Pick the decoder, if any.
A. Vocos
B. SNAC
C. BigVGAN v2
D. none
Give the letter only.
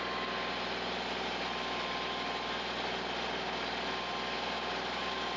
D